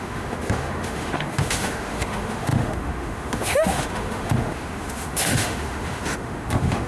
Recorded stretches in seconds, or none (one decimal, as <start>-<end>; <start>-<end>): none